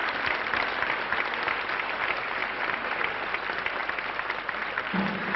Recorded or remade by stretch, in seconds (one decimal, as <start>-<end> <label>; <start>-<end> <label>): 0.0-5.4 recorded